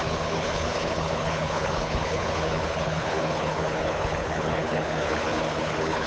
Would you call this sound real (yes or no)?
no